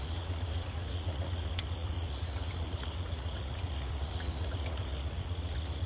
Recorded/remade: remade